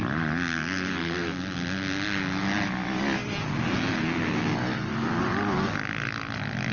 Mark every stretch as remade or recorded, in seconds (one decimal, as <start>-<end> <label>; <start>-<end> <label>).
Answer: 0.0-6.7 recorded